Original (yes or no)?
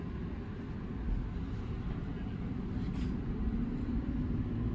yes